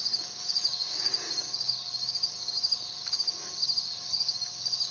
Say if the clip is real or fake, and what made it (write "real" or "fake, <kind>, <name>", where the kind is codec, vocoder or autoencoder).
fake, codec, DAC